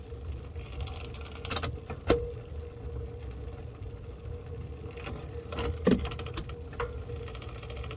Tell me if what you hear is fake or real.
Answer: real